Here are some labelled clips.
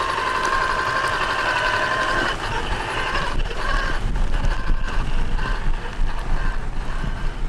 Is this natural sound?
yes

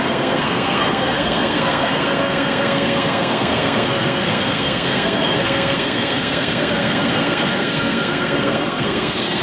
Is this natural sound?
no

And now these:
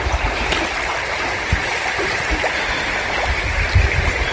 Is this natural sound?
yes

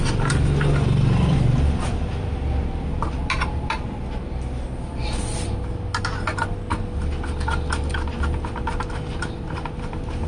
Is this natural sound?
yes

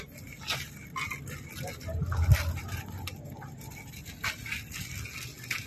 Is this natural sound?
yes